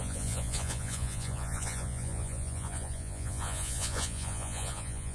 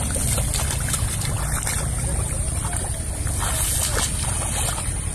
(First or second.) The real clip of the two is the second